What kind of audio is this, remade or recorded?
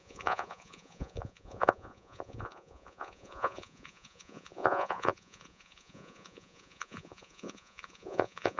remade